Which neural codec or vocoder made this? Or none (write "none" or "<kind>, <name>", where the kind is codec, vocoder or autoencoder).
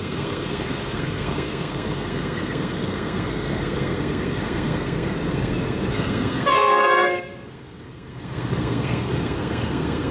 codec, SNAC